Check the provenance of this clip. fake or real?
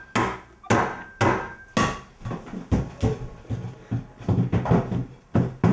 real